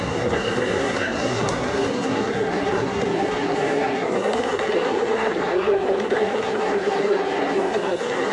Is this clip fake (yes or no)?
yes